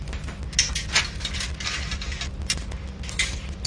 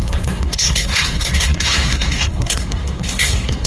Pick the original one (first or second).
first